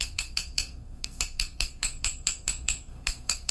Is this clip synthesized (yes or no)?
yes